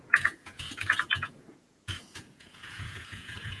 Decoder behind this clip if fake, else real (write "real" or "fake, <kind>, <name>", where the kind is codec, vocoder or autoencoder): fake, vocoder, Vocos